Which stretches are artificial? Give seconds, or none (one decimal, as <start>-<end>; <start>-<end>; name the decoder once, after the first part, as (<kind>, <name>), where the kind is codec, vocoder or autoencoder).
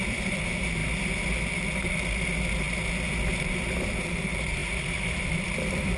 0.0-0.8 (vocoder, BigVGAN v2); 3.4-6.0